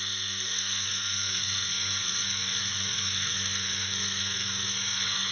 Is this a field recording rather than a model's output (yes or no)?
no